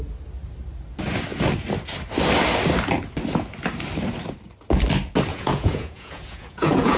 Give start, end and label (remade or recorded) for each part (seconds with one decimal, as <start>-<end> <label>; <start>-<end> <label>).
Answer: 0.0-5.3 recorded; 5.3-7.0 remade